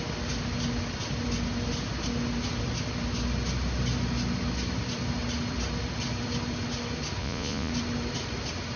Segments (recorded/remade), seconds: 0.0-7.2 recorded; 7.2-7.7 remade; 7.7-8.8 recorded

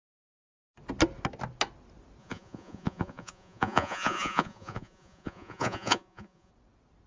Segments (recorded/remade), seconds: 0.0-2.2 recorded; 2.2-6.5 remade; 6.5-7.1 recorded